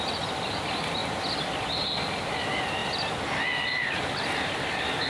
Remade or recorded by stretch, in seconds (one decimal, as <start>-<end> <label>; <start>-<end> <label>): 0.0-5.1 recorded